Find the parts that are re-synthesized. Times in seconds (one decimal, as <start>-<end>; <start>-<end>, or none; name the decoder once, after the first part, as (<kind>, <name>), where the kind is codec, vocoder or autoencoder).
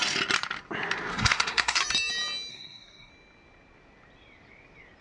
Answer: 1.1-1.8 (codec, SNAC); 2.5-3.1